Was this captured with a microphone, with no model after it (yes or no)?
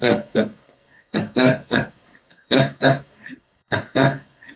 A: no